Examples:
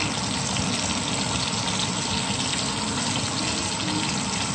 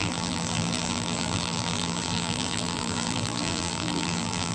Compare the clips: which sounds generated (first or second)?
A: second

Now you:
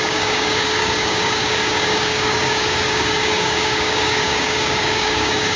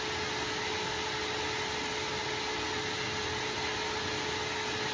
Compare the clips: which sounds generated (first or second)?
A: first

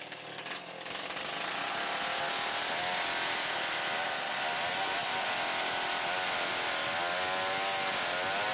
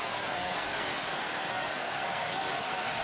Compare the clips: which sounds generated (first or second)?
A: second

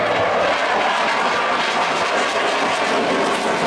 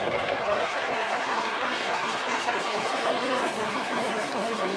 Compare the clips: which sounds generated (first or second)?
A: second